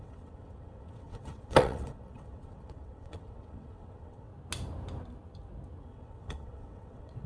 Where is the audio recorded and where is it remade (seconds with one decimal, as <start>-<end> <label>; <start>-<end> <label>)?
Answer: 0.0-4.3 remade; 4.3-5.8 recorded; 5.8-7.3 remade